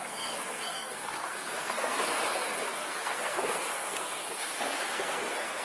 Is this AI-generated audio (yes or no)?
yes